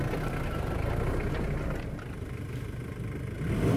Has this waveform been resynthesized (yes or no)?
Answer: no